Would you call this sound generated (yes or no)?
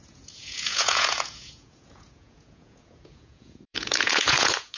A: yes